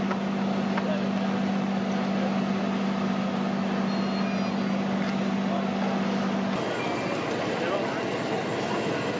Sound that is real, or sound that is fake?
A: real